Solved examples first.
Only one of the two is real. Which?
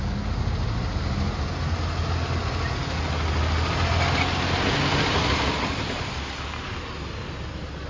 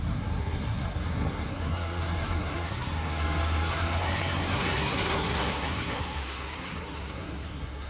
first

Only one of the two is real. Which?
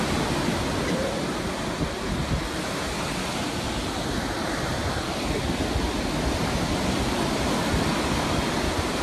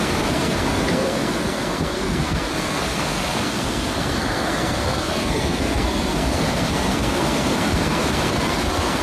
first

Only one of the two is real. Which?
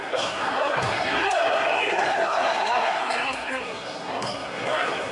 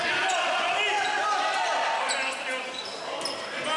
second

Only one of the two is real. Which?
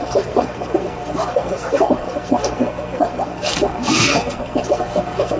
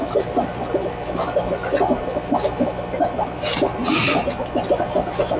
second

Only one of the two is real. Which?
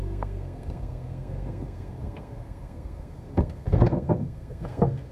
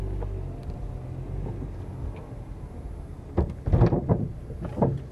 second